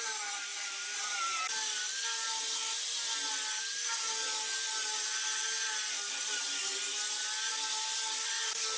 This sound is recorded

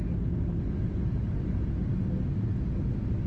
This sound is recorded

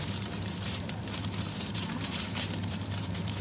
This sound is remade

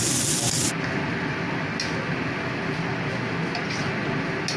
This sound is recorded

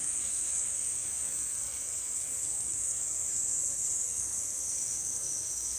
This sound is remade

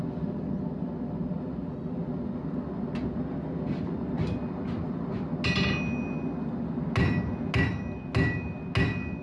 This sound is recorded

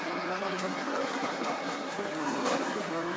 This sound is remade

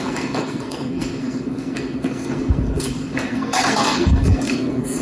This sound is remade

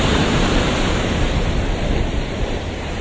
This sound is remade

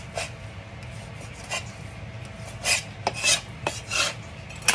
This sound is recorded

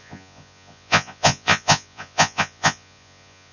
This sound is remade